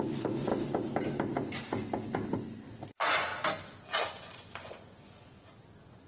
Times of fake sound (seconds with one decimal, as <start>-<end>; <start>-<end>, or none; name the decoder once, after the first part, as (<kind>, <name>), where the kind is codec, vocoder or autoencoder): 0.0-0.5 (vocoder, Vocos); 2.9-3.3; 4.1-6.1